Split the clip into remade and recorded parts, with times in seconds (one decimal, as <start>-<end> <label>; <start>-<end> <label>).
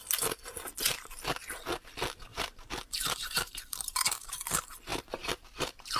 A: 0.0-2.3 recorded; 2.3-4.4 remade; 4.4-4.9 recorded; 4.9-6.0 remade